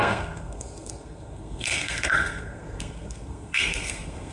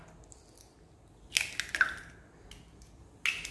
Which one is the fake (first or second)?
first